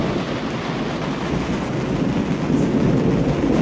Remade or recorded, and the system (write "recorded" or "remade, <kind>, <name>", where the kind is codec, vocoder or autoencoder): recorded